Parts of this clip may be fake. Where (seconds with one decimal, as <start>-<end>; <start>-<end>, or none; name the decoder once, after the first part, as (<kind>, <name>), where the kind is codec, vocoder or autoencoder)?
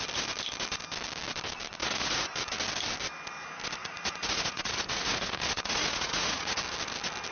1.8-2.3 (vocoder, Vocos); 3.8-6.6